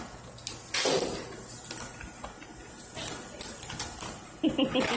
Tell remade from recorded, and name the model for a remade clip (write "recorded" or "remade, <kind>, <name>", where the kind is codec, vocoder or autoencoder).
recorded